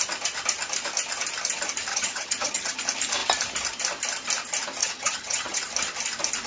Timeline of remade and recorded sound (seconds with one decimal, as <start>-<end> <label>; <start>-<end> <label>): 0.0-1.9 recorded; 1.9-2.8 remade; 2.8-4.8 recorded; 4.8-5.6 remade; 5.6-6.5 recorded